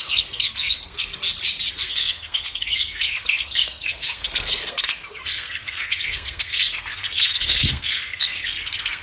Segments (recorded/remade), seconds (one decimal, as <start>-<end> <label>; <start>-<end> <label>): 0.0-1.1 remade; 1.1-1.7 recorded; 1.7-9.0 remade